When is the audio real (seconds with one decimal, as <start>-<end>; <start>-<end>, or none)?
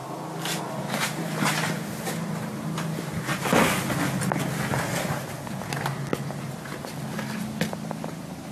0.0-0.6; 3.3-8.5